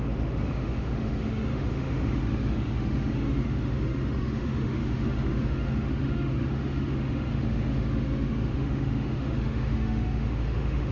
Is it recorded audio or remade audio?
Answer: remade